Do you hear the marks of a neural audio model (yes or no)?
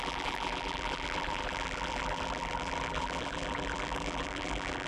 yes